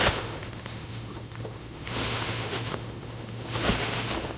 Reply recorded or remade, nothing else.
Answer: remade